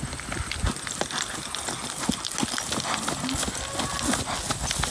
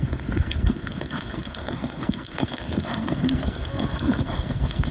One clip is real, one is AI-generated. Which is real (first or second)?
first